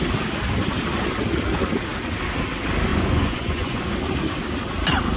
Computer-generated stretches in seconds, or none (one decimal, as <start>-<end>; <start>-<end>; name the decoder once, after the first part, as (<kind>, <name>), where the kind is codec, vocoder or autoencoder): 2.9-3.8 (vocoder, Vocos)